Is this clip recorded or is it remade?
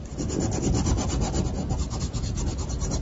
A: recorded